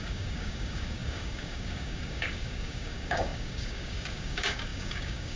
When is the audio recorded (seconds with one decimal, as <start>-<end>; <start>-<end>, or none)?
none